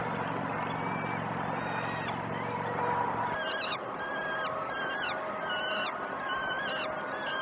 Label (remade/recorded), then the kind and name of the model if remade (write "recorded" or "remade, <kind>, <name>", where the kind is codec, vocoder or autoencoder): recorded